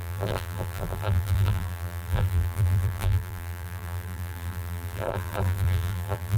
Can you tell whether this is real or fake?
fake